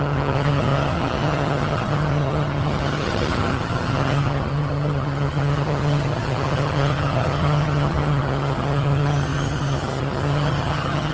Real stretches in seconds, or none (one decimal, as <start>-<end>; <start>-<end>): none